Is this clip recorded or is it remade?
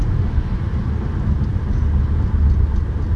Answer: recorded